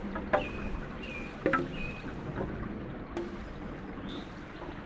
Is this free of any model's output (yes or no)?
yes